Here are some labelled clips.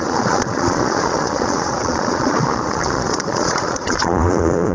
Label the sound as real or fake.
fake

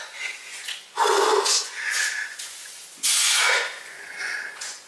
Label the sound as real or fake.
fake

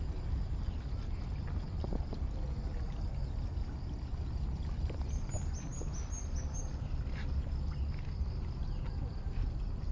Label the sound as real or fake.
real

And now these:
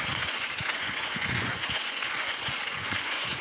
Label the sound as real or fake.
fake